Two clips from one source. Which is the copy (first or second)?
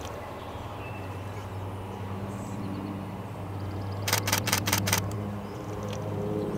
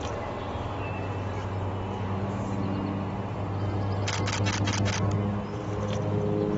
first